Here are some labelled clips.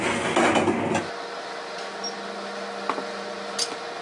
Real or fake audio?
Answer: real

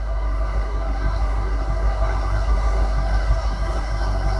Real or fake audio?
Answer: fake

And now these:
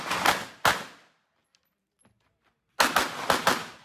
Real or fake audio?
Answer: real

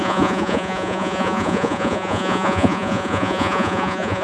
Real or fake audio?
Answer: fake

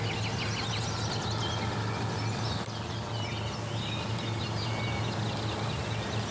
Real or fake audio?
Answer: real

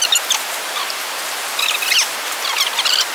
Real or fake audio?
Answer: real